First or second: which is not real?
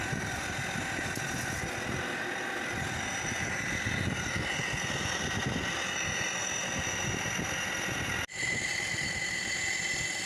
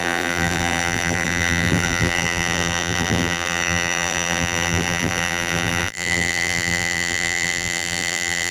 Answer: second